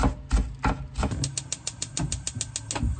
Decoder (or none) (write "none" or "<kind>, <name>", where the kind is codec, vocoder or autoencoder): none